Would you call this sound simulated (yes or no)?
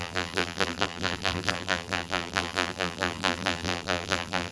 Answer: yes